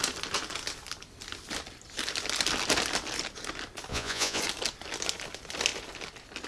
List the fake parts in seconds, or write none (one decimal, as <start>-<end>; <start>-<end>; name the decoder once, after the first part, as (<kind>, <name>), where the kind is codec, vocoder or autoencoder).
3.9-4.4 (vocoder, Vocos)